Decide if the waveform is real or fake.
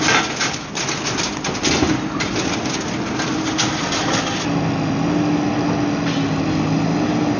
real